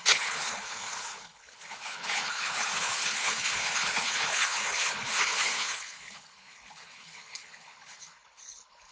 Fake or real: fake